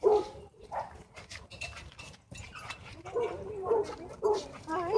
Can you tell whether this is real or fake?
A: fake